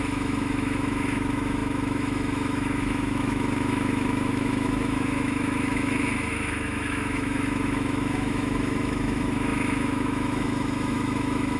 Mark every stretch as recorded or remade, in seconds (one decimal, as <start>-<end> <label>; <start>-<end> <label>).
0.0-11.6 remade